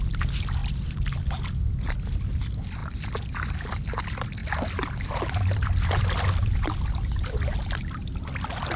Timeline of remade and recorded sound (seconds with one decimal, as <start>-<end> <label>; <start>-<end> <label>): 0.0-0.6 recorded; 0.6-1.5 remade; 1.5-8.8 recorded